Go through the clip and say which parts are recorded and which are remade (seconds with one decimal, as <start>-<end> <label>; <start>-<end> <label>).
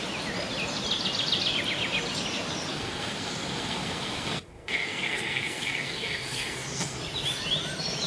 0.0-2.7 recorded; 2.7-7.0 remade; 7.0-8.1 recorded